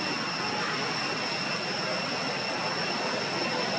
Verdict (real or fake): real